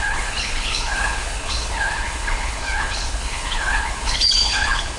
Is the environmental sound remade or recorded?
remade